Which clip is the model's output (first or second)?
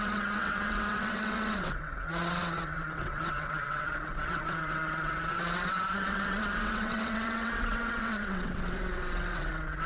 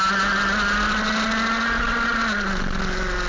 first